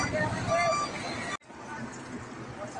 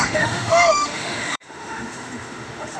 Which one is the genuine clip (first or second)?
first